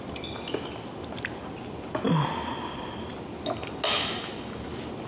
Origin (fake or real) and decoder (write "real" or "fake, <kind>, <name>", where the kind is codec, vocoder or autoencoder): real